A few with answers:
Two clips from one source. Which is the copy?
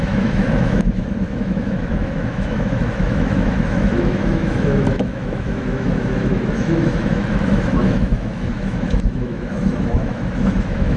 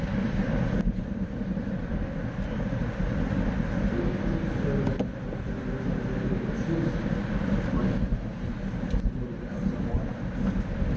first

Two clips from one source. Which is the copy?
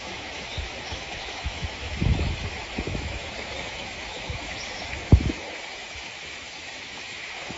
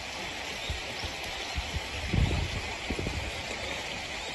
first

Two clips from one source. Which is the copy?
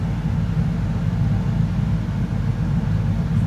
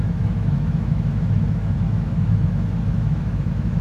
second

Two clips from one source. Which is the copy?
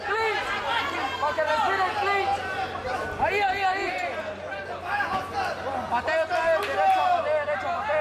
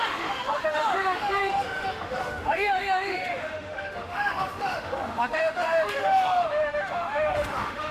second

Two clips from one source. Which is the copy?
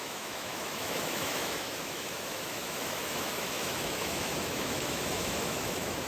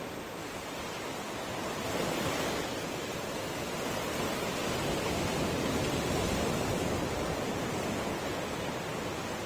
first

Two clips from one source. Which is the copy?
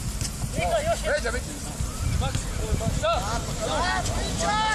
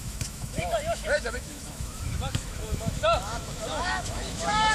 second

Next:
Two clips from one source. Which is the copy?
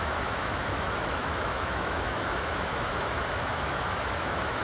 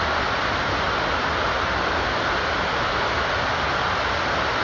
first